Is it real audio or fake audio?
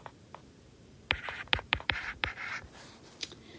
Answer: fake